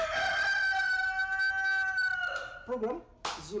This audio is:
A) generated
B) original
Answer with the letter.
B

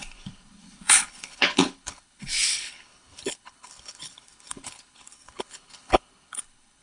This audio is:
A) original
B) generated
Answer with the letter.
B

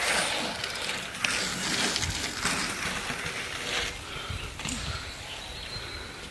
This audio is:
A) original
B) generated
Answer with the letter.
A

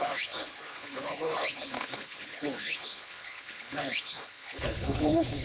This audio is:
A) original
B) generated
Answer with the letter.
B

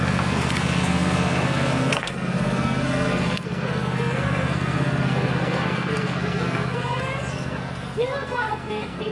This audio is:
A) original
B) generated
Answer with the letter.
B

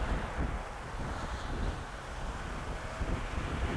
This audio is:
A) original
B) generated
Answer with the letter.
A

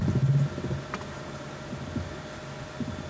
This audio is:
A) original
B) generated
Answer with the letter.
A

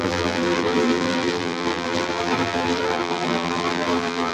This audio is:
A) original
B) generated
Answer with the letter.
B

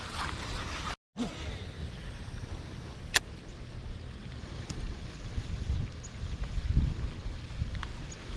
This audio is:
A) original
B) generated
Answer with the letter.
A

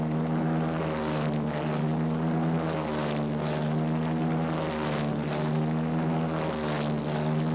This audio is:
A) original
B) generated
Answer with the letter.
A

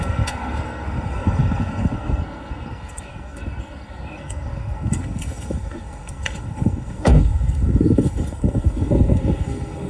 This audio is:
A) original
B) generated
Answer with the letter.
B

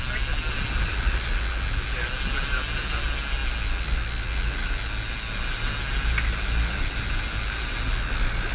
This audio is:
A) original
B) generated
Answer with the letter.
A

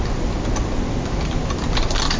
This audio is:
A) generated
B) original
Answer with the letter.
B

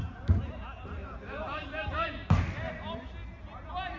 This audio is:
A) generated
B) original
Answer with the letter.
B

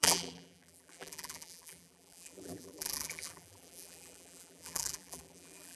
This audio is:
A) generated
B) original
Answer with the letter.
A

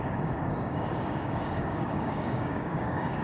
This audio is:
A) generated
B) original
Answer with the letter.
A